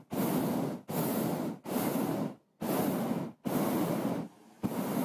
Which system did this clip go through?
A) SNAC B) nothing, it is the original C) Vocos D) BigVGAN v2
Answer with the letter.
B